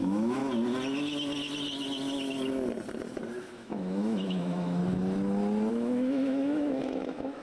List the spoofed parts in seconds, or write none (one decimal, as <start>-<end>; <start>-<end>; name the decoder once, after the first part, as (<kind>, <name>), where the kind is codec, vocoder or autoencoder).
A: 0.0-0.4 (autoencoder, DAC-VAE); 3.4-4.8; 5.7-7.4